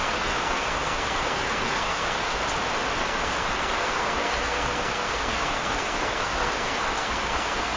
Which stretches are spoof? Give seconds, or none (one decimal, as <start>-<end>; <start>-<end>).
0.0-2.4; 3.0-7.8